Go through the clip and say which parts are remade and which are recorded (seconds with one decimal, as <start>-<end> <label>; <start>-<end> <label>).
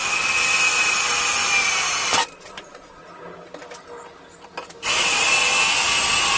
0.0-2.1 recorded; 2.1-3.0 remade; 3.0-6.4 recorded